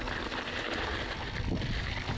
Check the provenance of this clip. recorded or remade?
recorded